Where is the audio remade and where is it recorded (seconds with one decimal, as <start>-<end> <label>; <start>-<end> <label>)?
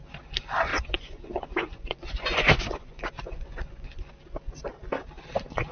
0.0-0.7 recorded; 0.7-4.1 remade; 4.1-5.7 recorded